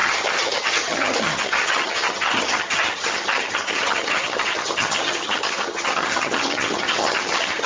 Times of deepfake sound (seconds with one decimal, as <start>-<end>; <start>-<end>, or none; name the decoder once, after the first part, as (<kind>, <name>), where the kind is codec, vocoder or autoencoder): 0.0-7.7 (vocoder, HiFi-GAN)